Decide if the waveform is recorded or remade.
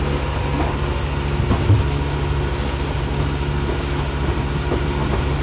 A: recorded